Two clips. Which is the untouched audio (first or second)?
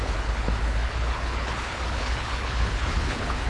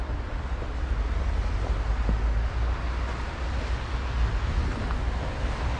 second